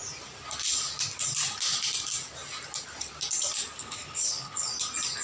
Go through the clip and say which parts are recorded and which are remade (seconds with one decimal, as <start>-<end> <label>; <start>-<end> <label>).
0.0-3.8 recorded; 3.8-4.7 remade; 4.7-5.2 recorded